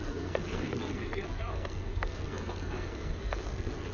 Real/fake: fake